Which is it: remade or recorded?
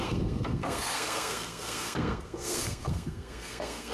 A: remade